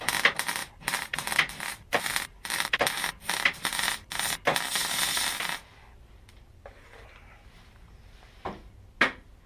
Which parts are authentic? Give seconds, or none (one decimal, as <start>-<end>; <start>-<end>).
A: 0.0-0.6; 4.1-4.8; 7.9-9.5